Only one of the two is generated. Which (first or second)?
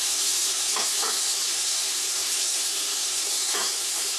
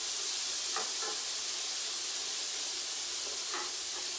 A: first